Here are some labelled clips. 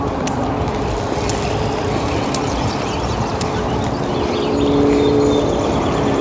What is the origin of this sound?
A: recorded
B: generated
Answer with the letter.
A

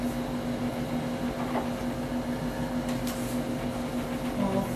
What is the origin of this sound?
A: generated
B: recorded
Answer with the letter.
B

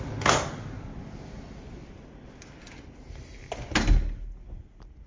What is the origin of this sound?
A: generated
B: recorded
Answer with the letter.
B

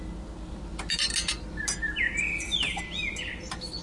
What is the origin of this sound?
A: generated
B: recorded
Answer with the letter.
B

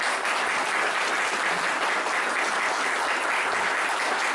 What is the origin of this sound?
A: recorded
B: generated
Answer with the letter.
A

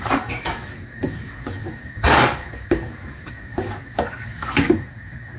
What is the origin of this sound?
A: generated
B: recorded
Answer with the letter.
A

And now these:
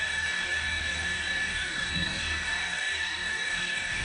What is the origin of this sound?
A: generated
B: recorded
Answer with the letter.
A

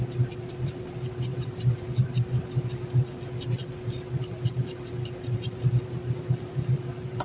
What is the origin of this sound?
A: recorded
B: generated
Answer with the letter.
A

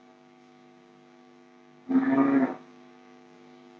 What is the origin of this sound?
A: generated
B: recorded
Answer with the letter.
A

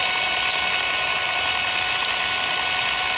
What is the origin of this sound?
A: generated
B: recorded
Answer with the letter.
B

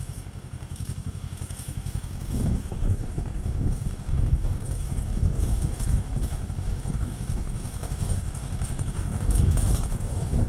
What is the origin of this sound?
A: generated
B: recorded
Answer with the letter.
A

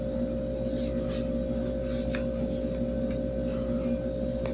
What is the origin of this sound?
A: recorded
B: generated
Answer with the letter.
A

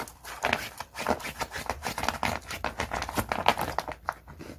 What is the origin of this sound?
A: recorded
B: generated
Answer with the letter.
A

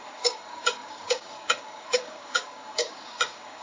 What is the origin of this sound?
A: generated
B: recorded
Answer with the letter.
A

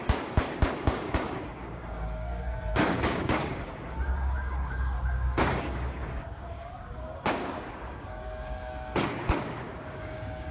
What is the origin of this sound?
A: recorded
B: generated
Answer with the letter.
B